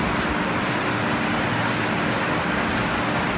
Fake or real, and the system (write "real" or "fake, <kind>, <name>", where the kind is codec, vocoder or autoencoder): real